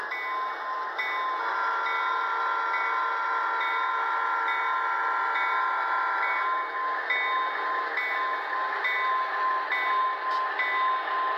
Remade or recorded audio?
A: recorded